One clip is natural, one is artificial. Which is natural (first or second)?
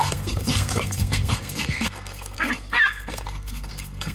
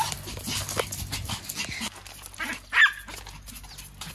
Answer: second